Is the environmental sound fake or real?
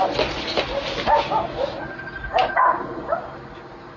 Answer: real